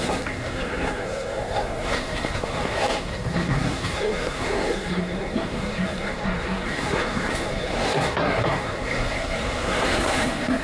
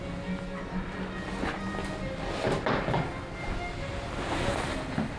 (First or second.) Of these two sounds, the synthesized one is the first